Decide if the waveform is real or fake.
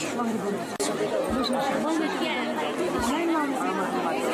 real